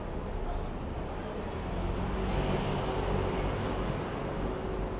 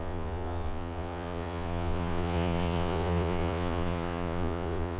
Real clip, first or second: first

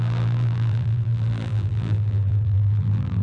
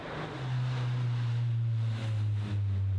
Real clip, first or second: second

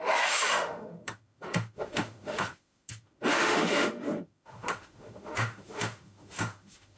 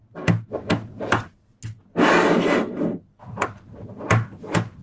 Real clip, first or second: second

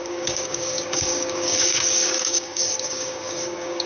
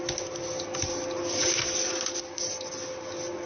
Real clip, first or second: second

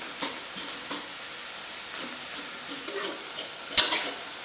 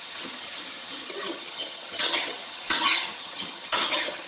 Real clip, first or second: first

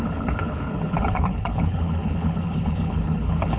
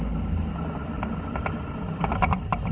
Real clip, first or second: second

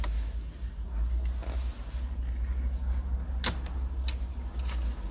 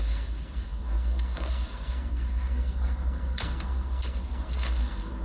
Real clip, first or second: first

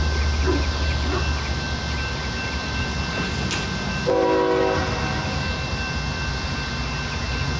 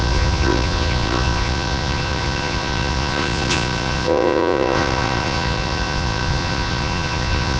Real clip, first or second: first